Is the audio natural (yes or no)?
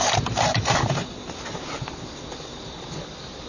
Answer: yes